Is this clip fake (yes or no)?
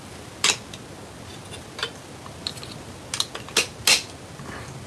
no